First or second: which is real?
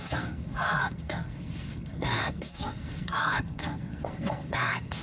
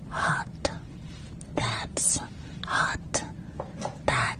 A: second